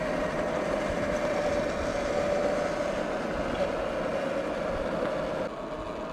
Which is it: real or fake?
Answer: real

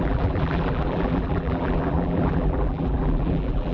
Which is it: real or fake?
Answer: fake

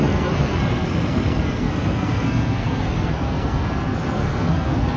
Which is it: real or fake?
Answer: fake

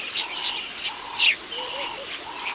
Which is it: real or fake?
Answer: fake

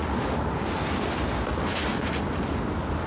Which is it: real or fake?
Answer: real